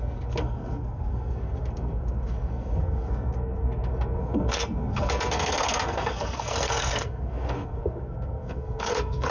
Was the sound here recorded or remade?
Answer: remade